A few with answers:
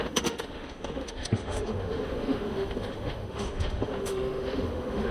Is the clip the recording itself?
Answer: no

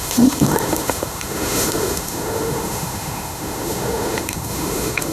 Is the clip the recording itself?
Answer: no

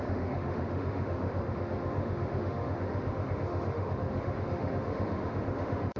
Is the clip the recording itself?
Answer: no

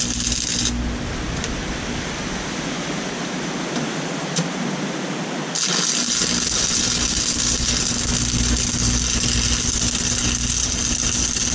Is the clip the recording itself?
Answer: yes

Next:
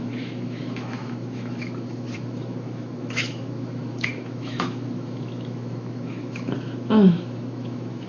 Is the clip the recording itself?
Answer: no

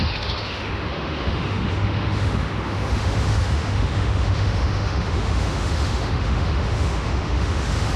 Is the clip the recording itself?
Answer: no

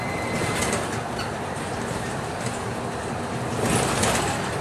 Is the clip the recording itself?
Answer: yes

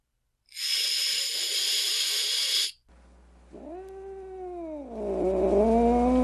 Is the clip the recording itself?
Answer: yes